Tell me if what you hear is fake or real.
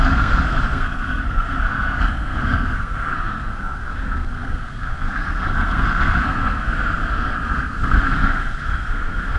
fake